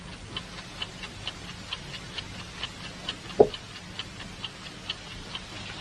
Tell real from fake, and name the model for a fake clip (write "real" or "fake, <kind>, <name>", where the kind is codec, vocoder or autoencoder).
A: real